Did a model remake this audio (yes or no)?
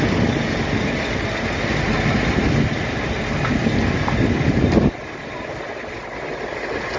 no